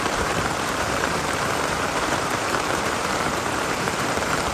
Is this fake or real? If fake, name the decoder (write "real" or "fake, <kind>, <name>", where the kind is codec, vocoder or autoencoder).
fake, vocoder, BigVGAN v2